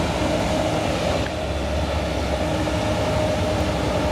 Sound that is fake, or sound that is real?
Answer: real